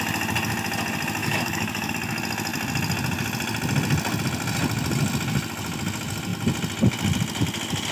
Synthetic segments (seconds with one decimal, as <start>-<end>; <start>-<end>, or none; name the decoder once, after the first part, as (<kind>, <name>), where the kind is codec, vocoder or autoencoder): 1.2-1.9 (codec, DAC)